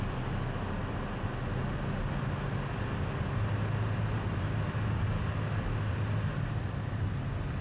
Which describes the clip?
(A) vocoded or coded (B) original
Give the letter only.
B